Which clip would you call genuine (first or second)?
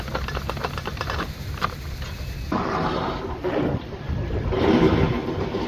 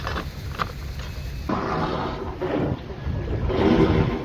second